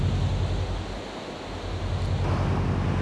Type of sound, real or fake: real